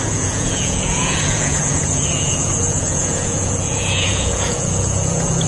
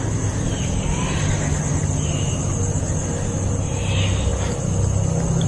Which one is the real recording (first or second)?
second